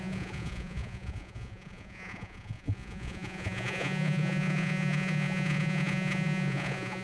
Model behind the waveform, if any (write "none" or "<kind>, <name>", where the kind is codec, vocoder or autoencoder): vocoder, Vocos